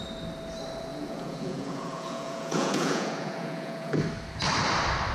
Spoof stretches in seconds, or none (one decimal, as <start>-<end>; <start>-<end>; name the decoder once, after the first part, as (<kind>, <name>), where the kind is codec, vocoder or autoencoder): 0.9-4.0 (vocoder, Vocos)